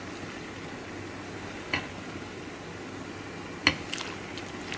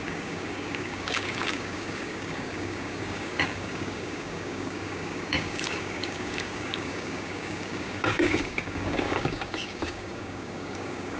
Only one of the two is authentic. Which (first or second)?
first